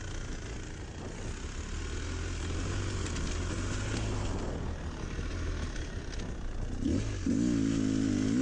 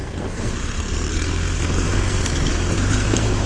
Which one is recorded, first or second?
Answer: first